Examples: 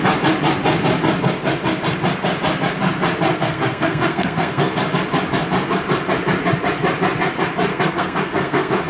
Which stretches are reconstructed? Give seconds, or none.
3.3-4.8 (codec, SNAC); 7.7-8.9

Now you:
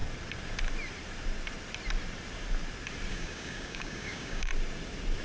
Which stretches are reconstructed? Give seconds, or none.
3.1-4.5 (codec, DAC)